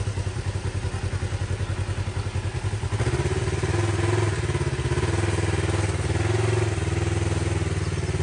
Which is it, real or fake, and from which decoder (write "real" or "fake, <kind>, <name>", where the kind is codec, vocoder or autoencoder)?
real